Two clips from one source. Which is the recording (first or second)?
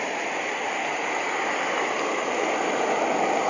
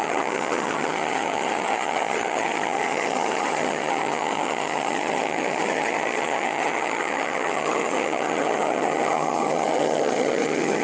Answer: first